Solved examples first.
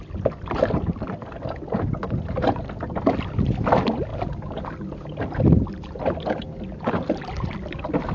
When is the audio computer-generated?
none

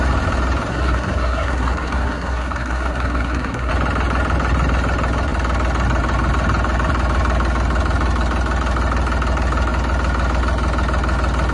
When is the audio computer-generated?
0.7-3.7 (codec, SNAC)

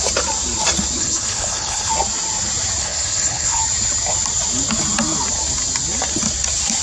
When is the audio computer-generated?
1.0-1.9 (codec, HILCodec); 2.8-3.6

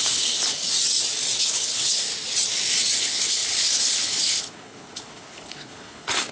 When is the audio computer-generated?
0.0-0.6 (codec, HILCodec); 1.4-2.1; 3.0-6.3